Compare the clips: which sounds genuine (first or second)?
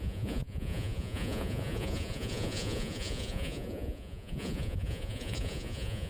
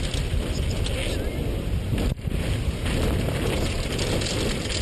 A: second